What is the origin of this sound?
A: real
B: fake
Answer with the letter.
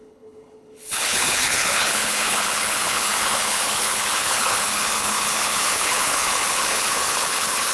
B